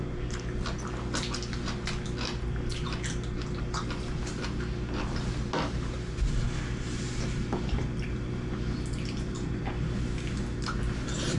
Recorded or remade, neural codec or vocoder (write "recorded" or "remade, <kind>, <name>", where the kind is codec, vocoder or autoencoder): recorded